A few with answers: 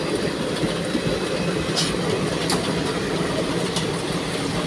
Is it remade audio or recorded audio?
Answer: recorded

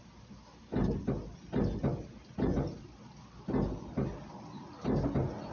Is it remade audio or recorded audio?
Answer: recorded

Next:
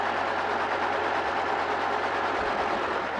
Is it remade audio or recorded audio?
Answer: recorded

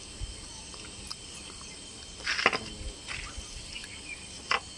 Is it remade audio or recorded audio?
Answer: recorded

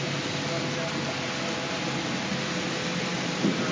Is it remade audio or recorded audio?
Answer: recorded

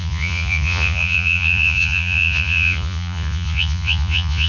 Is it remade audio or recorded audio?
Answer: remade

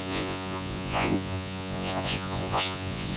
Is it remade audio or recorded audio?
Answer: remade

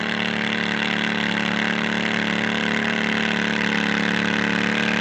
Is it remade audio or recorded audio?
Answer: recorded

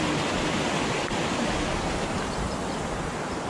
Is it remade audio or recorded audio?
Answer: recorded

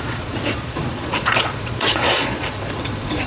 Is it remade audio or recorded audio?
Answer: remade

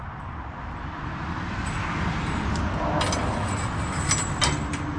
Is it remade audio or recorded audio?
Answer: recorded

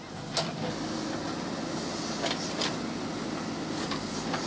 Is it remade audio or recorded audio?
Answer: recorded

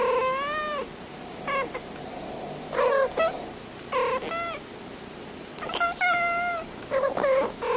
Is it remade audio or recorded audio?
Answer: recorded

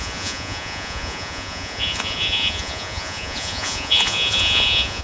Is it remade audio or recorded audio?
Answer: remade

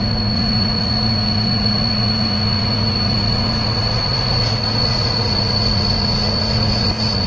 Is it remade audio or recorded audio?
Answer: remade